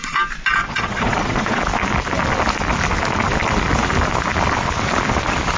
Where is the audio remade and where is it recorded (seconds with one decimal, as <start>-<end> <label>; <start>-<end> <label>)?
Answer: 0.0-0.6 recorded; 0.6-1.6 remade; 1.6-5.6 recorded